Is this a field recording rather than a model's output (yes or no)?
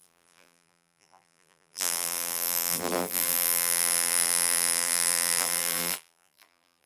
no